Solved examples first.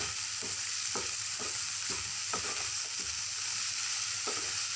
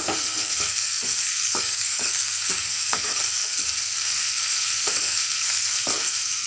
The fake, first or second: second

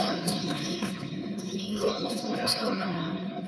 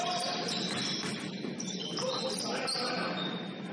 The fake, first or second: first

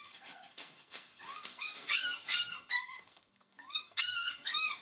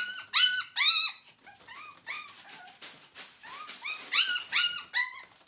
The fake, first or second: first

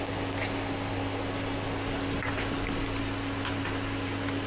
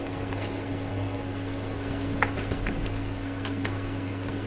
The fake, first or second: second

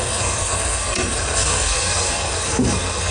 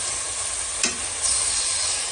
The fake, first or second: first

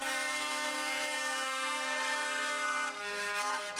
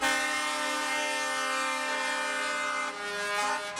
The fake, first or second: first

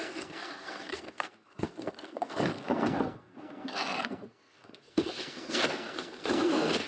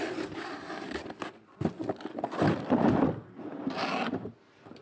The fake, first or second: first